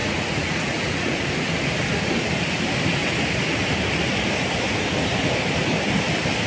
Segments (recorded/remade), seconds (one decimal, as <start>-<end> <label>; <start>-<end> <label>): 0.0-1.3 remade; 1.3-6.5 recorded